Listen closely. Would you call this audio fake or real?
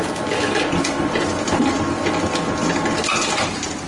real